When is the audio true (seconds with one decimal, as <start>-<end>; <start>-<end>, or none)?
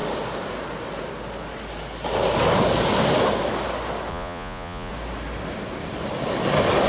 0.0-4.1; 4.9-6.9